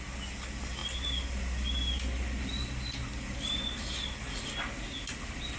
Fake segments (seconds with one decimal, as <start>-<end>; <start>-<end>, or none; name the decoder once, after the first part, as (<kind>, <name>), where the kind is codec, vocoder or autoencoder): none